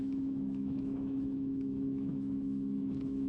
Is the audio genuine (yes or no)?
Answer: no